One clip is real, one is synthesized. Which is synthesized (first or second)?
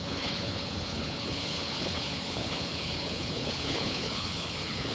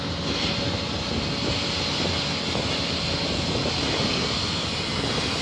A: first